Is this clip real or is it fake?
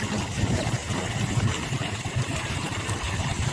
fake